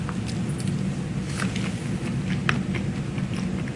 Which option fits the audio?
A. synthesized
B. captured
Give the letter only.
B